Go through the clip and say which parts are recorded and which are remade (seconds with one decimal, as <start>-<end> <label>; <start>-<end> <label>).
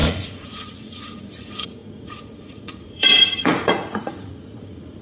0.0-5.0 remade